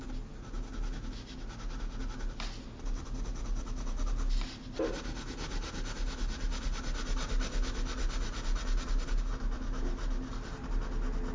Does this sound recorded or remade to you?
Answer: recorded